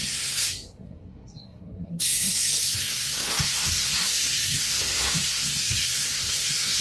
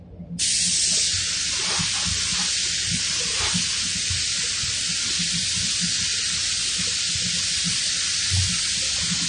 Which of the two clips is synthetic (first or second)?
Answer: first